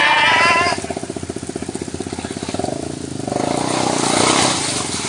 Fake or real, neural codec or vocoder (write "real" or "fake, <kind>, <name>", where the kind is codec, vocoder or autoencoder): real